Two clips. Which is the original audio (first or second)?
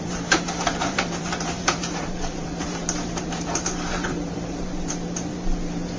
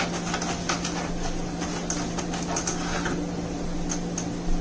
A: second